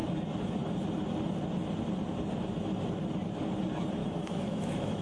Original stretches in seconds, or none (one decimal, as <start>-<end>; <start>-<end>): 0.0-4.0